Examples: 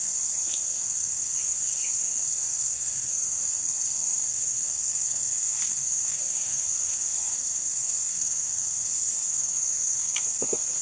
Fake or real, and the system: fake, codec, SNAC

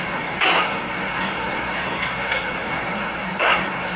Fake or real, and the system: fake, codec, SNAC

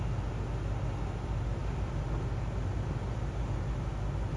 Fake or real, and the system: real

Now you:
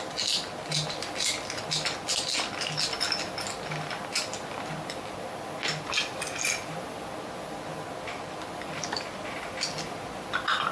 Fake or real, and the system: real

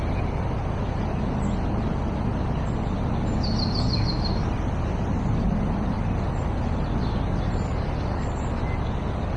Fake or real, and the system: real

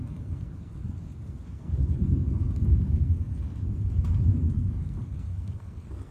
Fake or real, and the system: fake, codec, SNAC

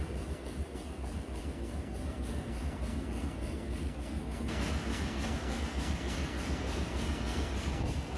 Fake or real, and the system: fake, codec, SNAC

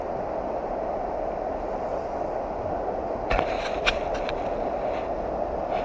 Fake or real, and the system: real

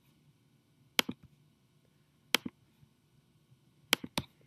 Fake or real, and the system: real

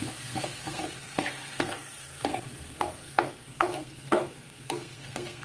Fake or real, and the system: fake, codec, SNAC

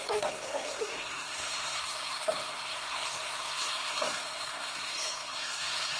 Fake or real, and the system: fake, codec, SNAC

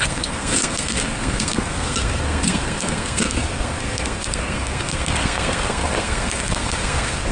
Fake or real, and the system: fake, codec, SNAC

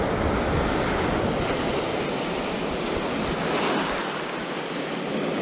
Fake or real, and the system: real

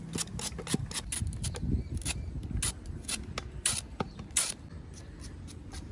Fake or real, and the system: real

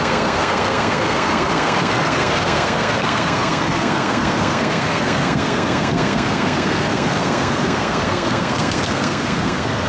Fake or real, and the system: fake, codec, SNAC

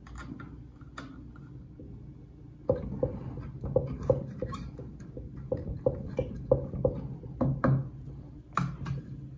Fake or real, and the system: real